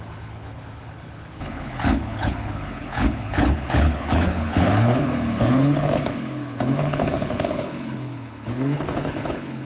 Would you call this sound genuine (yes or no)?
no